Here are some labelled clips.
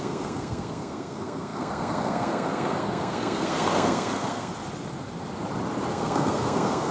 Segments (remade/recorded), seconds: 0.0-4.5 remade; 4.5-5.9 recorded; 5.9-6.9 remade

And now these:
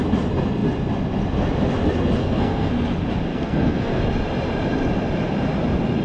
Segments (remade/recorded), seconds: 0.0-2.2 recorded; 2.2-2.7 remade; 2.7-3.3 recorded; 3.3-4.0 remade; 4.0-6.0 recorded

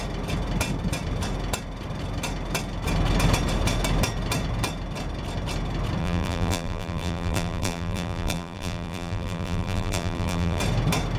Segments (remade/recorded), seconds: 0.0-6.0 recorded; 6.0-10.6 remade; 10.6-11.2 recorded